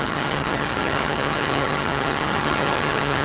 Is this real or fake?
fake